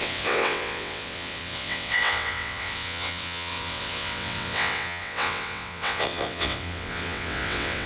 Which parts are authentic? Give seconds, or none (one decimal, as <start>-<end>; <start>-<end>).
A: none